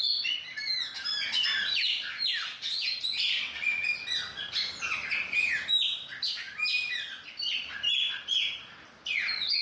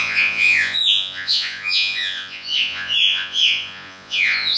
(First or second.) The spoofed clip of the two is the second